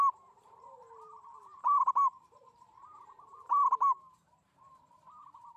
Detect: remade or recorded remade